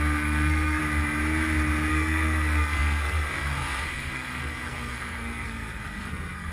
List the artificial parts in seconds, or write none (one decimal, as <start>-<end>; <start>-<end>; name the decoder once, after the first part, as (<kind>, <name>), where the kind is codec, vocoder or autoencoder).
0.0-0.8 (codec, SNAC); 1.9-6.5